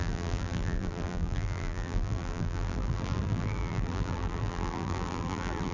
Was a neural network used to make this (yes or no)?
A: yes